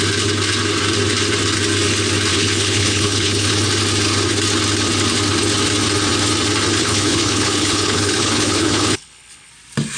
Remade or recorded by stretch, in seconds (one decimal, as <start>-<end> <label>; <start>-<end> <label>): 0.0-2.3 recorded; 2.3-3.5 remade; 3.5-6.8 recorded; 6.8-9.5 remade; 9.5-10.0 recorded

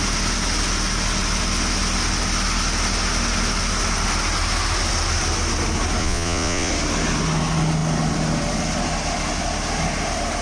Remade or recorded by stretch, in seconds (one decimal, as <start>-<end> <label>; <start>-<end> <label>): 0.0-6.0 recorded; 6.0-6.7 remade; 6.7-10.4 recorded

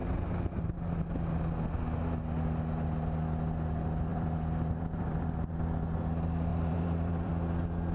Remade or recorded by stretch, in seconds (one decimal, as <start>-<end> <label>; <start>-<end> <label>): 0.0-4.1 recorded; 4.1-5.5 remade; 5.5-6.5 recorded; 6.5-7.3 remade; 7.3-7.9 recorded

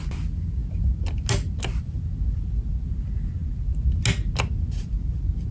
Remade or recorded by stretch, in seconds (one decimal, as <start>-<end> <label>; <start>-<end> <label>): 0.0-5.5 recorded

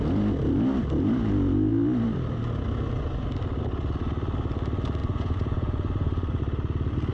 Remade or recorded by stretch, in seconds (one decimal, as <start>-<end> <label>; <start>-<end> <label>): 0.0-5.0 recorded; 5.0-6.4 remade; 6.4-7.1 recorded